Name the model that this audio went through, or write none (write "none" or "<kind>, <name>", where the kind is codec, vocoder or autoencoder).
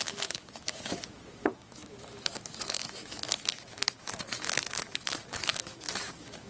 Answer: autoencoder, DAC-VAE